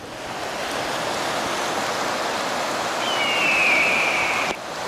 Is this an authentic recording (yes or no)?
yes